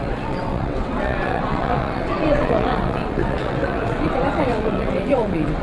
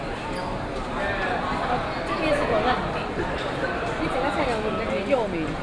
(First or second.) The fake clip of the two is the first